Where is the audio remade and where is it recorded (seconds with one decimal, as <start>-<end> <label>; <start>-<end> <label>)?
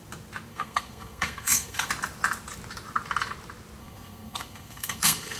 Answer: 0.0-0.5 recorded; 0.5-1.9 remade; 1.9-3.8 recorded; 3.8-5.4 remade